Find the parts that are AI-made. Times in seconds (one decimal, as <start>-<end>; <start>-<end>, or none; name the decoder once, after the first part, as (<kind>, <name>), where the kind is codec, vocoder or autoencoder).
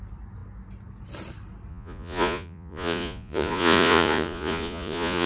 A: 1.7-5.3 (vocoder, Vocos)